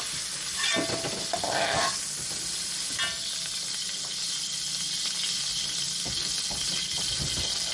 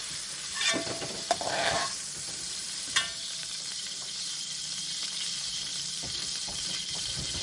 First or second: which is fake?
second